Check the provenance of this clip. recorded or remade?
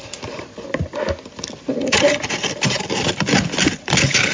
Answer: remade